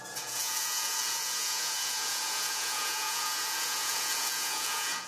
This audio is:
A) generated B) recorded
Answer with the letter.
A